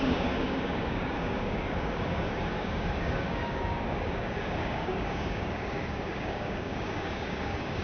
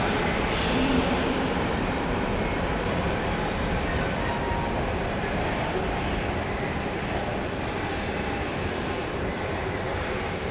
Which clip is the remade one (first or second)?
first